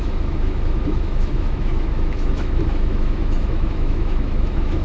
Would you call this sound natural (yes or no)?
no